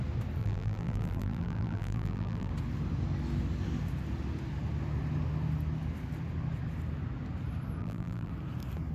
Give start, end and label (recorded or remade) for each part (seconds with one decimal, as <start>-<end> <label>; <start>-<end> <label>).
0.0-0.4 recorded; 0.4-2.5 remade; 2.5-7.8 recorded; 7.8-8.3 remade; 8.3-8.9 recorded